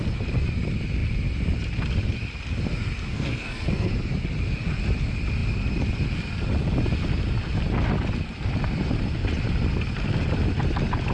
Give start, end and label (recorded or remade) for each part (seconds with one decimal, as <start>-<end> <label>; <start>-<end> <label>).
0.0-3.1 recorded; 3.1-3.9 remade; 3.9-11.1 recorded